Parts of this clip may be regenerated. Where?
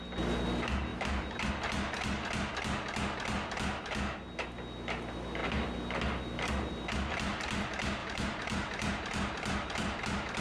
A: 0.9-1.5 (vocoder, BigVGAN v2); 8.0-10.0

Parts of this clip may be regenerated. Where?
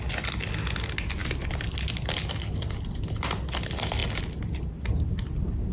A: none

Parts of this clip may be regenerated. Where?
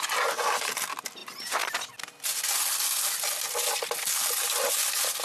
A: none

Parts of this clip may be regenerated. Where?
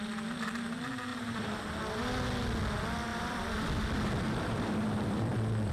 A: 1.1-1.6 (vocoder, BigVGAN v2); 3.1-5.7